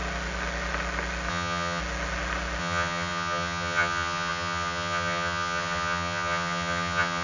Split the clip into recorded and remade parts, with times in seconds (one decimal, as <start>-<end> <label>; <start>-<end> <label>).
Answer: 0.0-1.3 recorded; 1.3-1.8 remade; 1.8-2.6 recorded; 2.6-7.2 remade